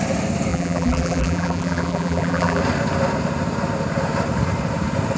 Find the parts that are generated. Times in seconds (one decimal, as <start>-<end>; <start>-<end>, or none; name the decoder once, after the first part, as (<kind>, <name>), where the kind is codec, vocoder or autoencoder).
0.5-2.6 (vocoder, BigVGAN v2)